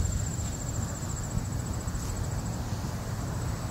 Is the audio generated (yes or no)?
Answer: no